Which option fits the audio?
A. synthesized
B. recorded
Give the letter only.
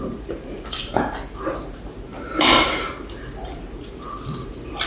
A